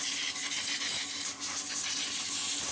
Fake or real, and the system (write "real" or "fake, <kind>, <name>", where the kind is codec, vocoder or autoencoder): real